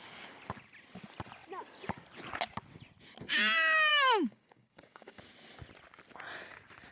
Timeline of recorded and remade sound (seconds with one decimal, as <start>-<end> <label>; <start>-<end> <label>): 0.0-3.9 recorded; 3.9-5.2 remade; 5.2-6.9 recorded